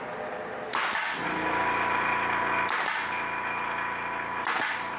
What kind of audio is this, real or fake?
real